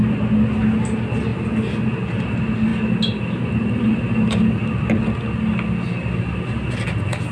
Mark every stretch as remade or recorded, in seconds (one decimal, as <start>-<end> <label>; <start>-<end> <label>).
0.0-7.3 recorded